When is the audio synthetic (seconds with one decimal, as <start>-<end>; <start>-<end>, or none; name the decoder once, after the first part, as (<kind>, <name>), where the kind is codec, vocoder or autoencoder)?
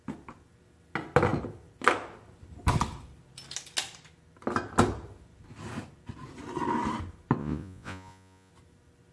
7.4-8.5 (vocoder, Vocos)